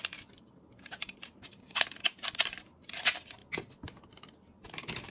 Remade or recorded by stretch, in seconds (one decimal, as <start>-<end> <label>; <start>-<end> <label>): 0.0-3.4 remade; 3.4-5.1 recorded